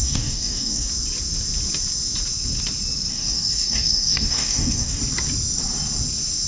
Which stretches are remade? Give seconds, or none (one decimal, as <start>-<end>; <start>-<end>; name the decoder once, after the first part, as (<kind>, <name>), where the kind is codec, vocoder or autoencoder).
0.0-0.9 (codec, DAC); 3.1-5.0

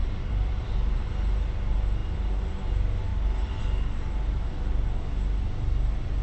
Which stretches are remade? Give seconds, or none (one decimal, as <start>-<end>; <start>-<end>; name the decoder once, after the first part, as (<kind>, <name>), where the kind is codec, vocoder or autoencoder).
0.0-1.0 (vocoder, BigVGAN v2); 3.1-3.6